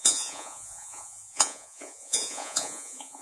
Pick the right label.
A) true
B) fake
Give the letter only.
B